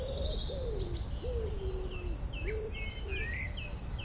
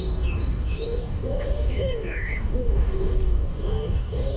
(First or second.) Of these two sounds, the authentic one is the first